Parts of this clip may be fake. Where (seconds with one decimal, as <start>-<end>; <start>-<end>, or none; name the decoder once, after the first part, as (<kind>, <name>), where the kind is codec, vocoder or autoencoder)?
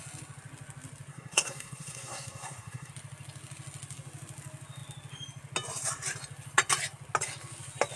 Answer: 1.1-2.9 (codec, SNAC)